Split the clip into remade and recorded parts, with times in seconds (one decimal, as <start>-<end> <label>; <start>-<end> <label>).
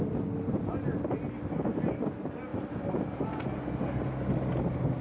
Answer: 0.0-5.0 recorded